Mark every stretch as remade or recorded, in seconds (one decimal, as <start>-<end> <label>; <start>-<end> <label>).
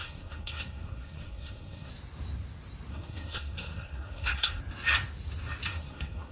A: 0.0-1.9 remade; 1.9-2.9 recorded; 2.9-4.6 remade; 4.6-5.7 recorded; 5.7-6.3 remade